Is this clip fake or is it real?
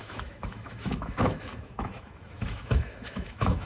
fake